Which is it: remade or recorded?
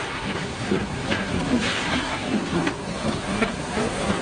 remade